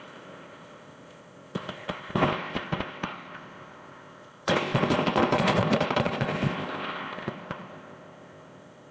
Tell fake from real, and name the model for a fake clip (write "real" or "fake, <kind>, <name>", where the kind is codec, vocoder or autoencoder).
fake, codec, ZipCodec